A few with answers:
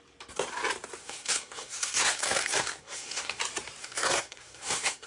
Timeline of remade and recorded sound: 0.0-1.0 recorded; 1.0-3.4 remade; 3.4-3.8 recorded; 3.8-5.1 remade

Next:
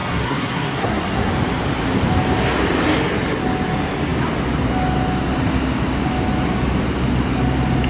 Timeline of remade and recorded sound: 0.0-1.3 remade; 1.3-7.9 recorded

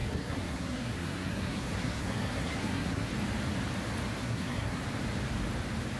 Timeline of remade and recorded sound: 0.0-3.1 remade; 3.1-4.2 recorded; 4.2-4.8 remade; 4.8-6.0 recorded

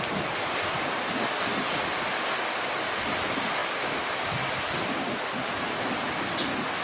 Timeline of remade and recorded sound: 0.0-6.8 recorded

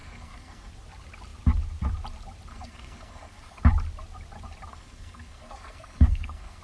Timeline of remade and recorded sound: 0.0-0.7 remade; 0.7-2.5 recorded; 2.5-3.6 remade; 3.6-4.7 recorded; 4.7-6.6 remade

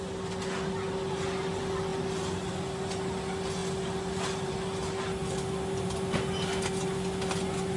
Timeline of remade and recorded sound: 0.0-7.8 recorded

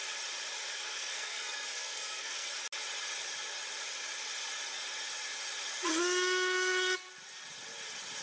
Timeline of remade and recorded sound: 0.0-0.8 recorded; 0.8-2.5 remade; 2.5-8.2 recorded

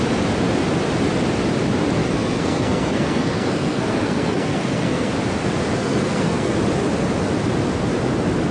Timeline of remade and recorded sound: 0.0-2.0 recorded; 2.0-5.1 remade; 5.1-5.8 recorded; 5.8-6.5 remade; 6.5-8.5 recorded